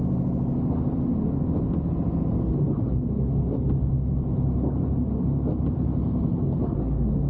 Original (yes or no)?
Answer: yes